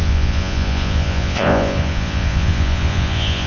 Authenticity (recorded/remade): remade